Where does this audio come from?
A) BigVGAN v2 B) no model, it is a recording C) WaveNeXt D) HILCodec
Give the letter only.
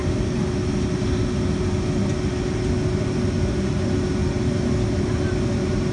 B